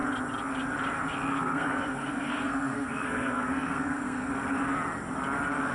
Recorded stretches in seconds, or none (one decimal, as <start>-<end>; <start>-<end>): 0.0-1.3; 4.3-5.7